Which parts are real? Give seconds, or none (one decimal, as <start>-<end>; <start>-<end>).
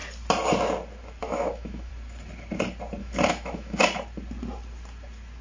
0.0-1.2; 1.9-3.0; 3.8-5.4